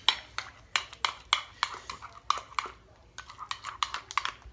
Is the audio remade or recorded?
recorded